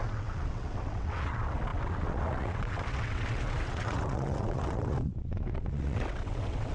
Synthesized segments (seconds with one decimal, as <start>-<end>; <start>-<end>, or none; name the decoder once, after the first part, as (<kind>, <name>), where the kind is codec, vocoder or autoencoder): 0.0-6.7 (vocoder, WaveNeXt)

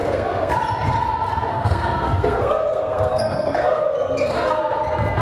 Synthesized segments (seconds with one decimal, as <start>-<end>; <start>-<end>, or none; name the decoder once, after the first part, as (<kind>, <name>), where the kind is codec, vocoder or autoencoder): 0.0-0.5 (codec, SNAC); 1.5-4.6

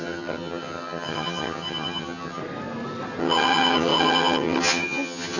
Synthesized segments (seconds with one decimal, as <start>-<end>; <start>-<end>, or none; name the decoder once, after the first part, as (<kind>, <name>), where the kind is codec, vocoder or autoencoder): 0.0-2.4 (vocoder, HiFi-GAN); 3.2-5.4